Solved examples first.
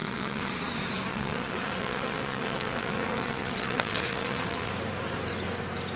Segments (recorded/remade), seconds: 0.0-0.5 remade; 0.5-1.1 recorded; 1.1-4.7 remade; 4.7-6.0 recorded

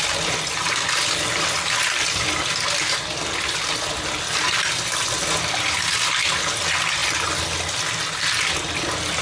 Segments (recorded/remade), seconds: 0.0-9.2 recorded

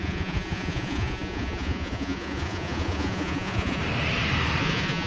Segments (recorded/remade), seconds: 0.0-3.8 remade; 3.8-4.6 recorded; 4.6-5.1 remade

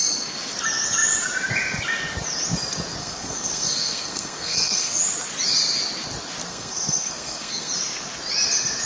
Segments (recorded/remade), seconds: 0.0-3.0 recorded; 3.0-5.0 remade; 5.0-6.5 recorded; 6.5-7.7 remade; 7.7-8.9 recorded

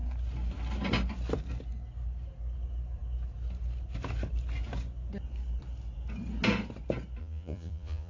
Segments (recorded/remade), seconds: 0.0-7.2 recorded; 7.2-8.1 remade

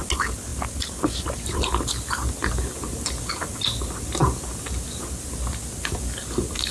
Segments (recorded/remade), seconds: 0.0-6.7 recorded

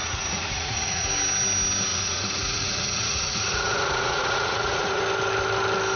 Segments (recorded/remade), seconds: 0.0-1.0 remade; 1.0-1.9 recorded; 1.9-5.0 remade; 5.0-6.0 recorded